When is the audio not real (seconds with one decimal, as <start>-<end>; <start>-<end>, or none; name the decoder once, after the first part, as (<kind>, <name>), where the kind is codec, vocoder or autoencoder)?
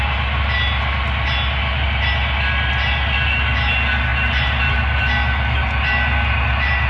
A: none